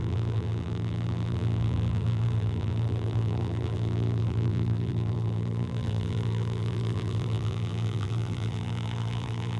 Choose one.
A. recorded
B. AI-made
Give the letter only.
B